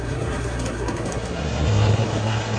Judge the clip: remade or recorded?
remade